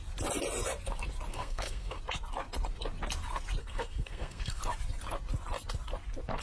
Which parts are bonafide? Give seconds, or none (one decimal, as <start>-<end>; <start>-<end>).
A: 0.0-1.3; 2.0-3.6; 4.6-6.4